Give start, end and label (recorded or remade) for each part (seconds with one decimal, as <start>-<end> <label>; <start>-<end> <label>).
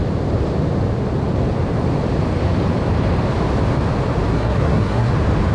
0.0-4.3 recorded; 4.3-5.1 remade; 5.1-5.5 recorded